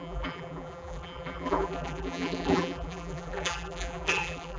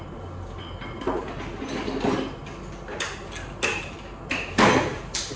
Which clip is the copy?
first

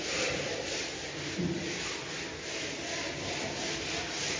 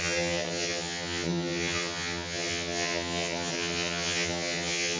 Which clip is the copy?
second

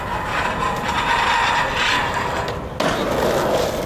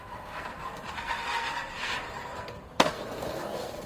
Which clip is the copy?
second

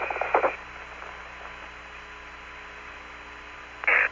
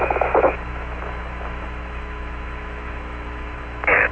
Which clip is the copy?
second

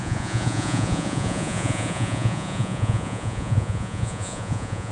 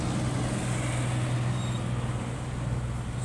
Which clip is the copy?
first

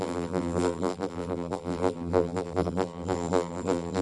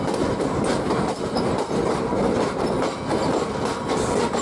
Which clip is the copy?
first